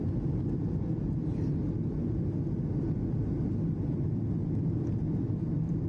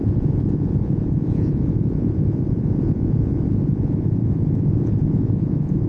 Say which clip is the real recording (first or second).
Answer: first